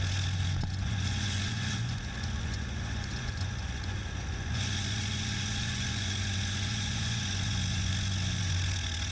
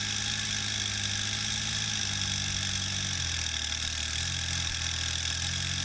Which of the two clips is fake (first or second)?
first